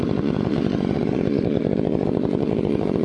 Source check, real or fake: fake